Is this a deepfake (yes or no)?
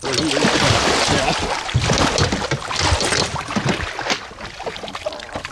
no